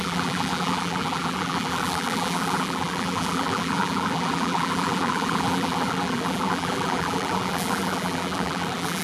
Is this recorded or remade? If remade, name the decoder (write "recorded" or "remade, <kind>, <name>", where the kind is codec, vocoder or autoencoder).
remade, vocoder, BigVGAN v2